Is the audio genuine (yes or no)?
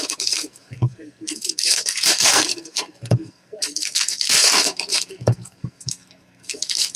no